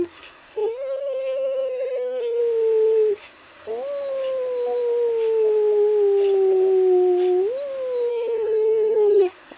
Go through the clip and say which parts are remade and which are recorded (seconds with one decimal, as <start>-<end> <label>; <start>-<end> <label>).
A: 0.0-2.4 remade; 2.4-3.1 recorded; 3.1-3.7 remade; 3.7-8.1 recorded; 8.1-9.6 remade

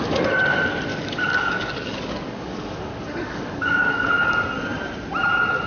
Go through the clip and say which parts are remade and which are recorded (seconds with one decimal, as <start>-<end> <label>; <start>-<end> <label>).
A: 0.0-0.9 recorded; 0.9-4.3 remade; 4.3-5.7 recorded

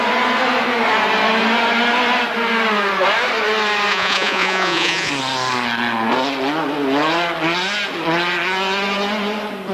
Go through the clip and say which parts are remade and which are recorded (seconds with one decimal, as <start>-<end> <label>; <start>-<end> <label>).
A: 0.0-3.9 recorded; 3.9-5.1 remade; 5.1-9.7 recorded

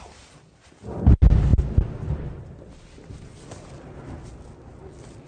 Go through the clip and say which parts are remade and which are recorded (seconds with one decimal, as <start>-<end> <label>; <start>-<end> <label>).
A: 0.0-5.3 recorded